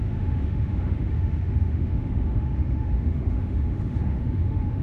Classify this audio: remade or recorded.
remade